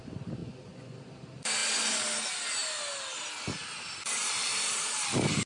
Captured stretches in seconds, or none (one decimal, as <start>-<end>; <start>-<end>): 0.0-0.4; 1.0-5.5